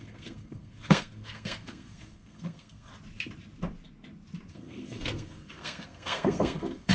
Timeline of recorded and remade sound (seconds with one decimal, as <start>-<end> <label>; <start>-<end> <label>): 0.0-2.9 remade; 2.9-4.5 recorded; 4.5-6.9 remade